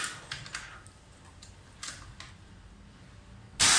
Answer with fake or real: real